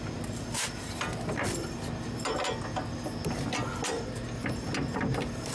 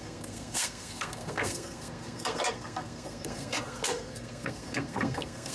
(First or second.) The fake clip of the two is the second